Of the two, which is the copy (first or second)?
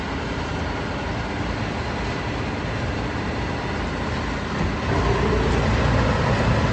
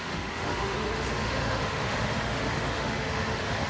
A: second